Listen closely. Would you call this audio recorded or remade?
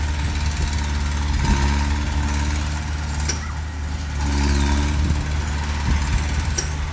recorded